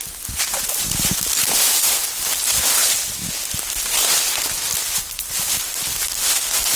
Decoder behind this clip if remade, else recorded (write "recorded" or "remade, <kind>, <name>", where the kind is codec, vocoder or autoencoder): recorded